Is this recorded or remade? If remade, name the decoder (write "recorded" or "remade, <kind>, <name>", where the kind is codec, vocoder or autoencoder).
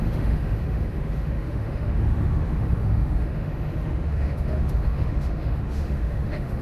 remade, autoencoder, DAC-VAE